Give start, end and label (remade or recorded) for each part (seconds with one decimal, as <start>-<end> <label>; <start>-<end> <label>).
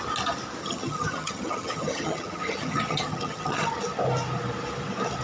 0.0-0.6 recorded; 0.6-3.7 remade; 3.7-5.2 recorded